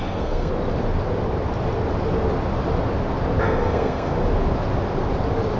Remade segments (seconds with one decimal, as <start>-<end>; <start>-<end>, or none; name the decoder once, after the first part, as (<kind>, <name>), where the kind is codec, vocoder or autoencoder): 0.0-0.5 (codec, SNAC); 3.4-4.1